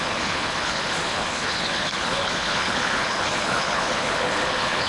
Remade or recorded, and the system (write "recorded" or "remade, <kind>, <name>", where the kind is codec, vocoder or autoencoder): remade, codec, HILCodec